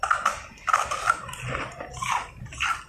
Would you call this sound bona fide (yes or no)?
no